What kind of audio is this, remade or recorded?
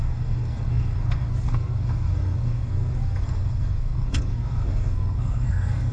remade